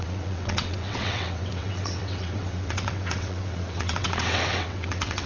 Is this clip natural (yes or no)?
no